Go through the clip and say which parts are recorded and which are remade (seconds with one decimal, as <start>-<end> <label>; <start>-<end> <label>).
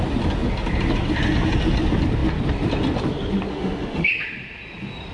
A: 0.0-3.5 recorded; 3.5-4.1 remade; 4.1-5.1 recorded